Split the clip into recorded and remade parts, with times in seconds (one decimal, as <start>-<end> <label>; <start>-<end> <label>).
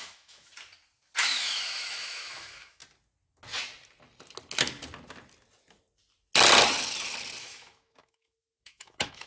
0.0-0.5 remade; 0.5-1.3 recorded; 1.3-2.8 remade; 2.8-7.4 recorded; 7.4-9.3 remade